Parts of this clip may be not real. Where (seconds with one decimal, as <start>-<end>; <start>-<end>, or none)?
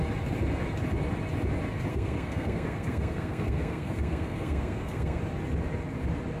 1.9-5.2